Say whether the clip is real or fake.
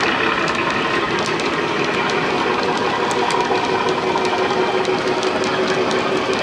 real